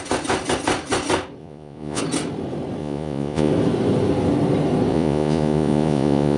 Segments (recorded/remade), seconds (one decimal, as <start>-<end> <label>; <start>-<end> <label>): 0.0-1.4 recorded; 1.4-2.0 remade; 2.0-2.8 recorded; 2.8-3.5 remade; 3.5-4.9 recorded; 4.9-6.4 remade